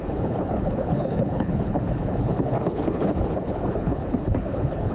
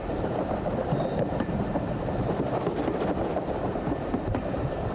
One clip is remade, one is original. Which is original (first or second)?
second